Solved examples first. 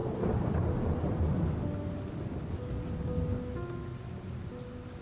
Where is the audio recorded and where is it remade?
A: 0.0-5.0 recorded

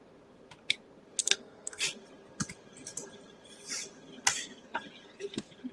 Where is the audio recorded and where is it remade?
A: 0.0-1.2 recorded; 1.2-1.8 remade; 1.8-5.7 recorded